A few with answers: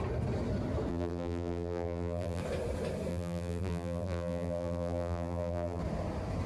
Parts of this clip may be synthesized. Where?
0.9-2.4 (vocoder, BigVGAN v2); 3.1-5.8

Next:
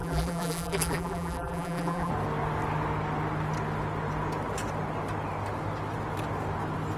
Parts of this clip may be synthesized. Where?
0.0-2.1 (vocoder, BigVGAN v2)